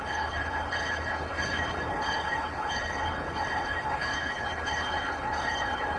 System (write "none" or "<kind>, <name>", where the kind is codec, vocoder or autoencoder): codec, HILCodec